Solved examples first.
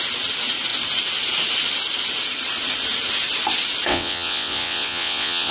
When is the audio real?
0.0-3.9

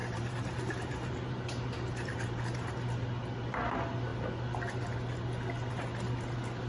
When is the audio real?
2.7-6.7

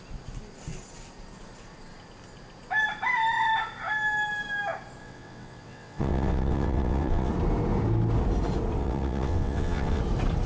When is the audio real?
0.0-5.0; 7.3-8.8; 10.0-10.5

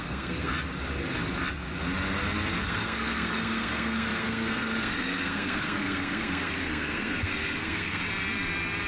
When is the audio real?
0.5-2.6; 8.0-8.9

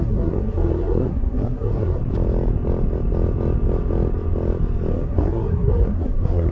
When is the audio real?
2.0-4.9

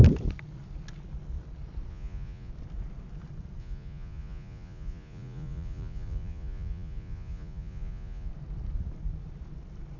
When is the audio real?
0.0-1.9; 2.5-3.6; 8.3-10.0

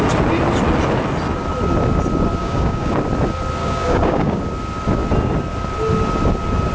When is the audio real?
0.0-2.4; 2.9-3.6; 4.4-6.7

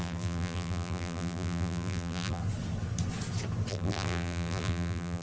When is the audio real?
2.4-3.7